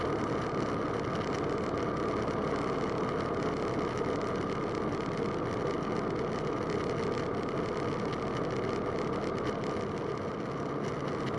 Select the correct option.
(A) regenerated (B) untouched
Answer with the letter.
B